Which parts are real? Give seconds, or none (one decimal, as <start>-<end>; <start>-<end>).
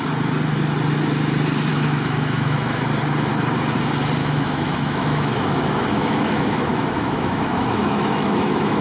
0.0-1.7; 2.8-4.2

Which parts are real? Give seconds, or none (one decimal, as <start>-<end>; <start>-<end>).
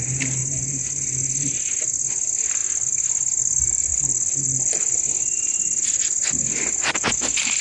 0.0-7.6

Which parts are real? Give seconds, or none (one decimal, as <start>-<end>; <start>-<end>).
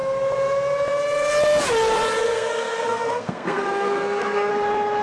0.0-2.3; 4.5-5.0